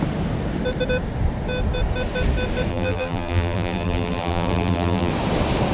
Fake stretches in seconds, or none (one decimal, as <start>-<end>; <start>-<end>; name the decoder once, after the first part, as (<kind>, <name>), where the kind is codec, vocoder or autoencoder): 2.7-5.1 (vocoder, BigVGAN v2)